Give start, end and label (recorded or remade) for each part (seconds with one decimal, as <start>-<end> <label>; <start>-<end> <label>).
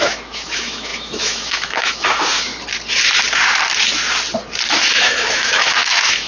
0.0-2.5 remade; 2.5-4.7 recorded; 4.7-6.3 remade